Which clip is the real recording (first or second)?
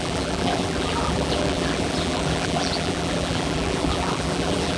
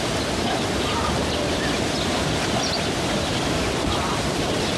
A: second